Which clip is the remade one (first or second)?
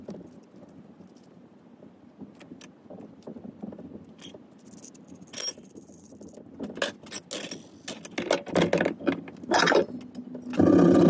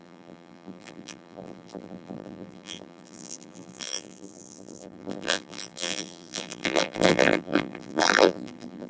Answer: second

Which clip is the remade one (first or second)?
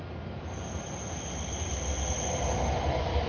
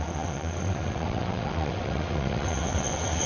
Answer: second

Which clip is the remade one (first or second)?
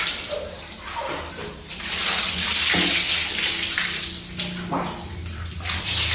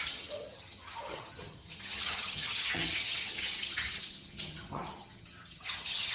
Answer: second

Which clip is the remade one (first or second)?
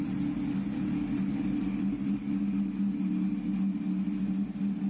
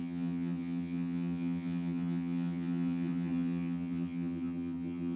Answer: second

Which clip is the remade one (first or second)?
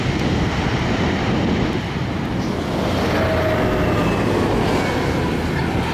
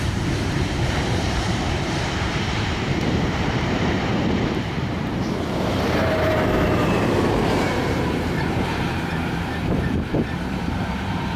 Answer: second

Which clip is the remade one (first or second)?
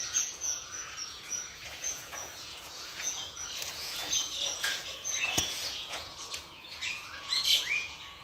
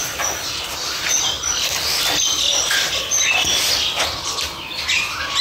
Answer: first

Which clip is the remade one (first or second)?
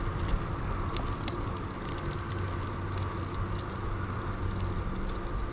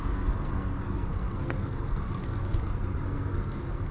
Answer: second